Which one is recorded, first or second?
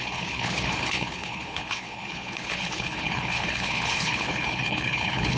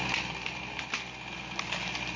second